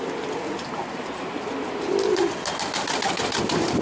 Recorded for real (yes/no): yes